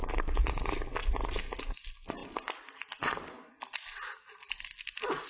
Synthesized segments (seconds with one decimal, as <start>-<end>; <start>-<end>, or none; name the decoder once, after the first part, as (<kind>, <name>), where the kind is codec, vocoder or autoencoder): 1.0-1.6 (vocoder, BigVGAN v2); 2.2-5.3